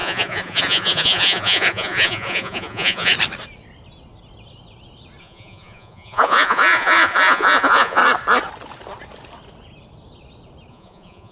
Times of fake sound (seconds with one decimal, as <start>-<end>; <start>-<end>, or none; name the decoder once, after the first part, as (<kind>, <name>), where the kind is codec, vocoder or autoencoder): 0.0-3.1 (vocoder, Vocos); 5.2-8.0; 10.7-11.3